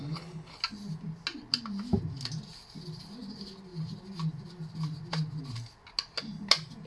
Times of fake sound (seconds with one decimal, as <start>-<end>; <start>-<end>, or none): 0.0-0.6